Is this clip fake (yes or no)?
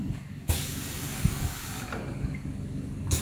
yes